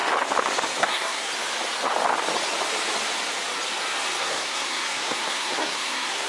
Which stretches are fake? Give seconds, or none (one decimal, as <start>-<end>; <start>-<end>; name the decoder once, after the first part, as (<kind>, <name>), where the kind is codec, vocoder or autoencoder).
0.8-1.3 (codec, SNAC); 4.2-6.3